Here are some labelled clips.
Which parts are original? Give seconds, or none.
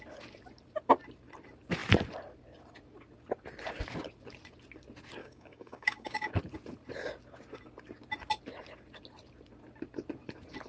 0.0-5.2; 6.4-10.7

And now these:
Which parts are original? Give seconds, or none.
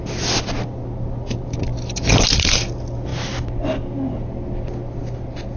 0.0-5.6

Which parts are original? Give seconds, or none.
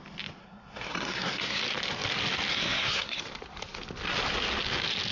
0.0-0.4; 1.6-2.5; 3.2-5.1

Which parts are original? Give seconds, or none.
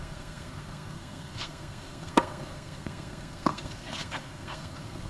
none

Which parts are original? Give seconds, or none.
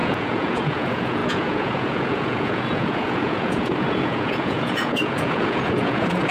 none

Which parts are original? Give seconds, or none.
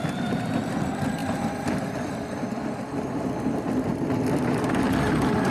0.0-5.5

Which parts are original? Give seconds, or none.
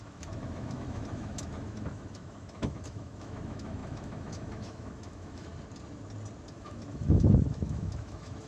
5.5-6.5